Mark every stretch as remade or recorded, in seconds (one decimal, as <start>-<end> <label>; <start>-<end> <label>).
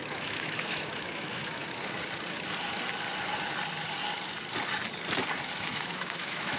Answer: 0.0-1.6 remade; 1.6-5.6 recorded; 5.6-6.6 remade